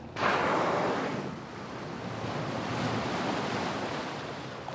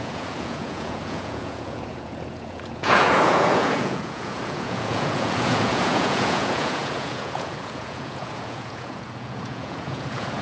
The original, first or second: first